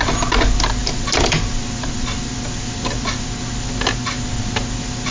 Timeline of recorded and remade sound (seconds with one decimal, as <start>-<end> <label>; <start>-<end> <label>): 0.0-0.8 recorded; 0.8-3.3 remade; 3.3-5.1 recorded